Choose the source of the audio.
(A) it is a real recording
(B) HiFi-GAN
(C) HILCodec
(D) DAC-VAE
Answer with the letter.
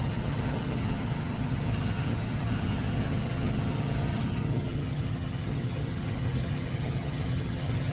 B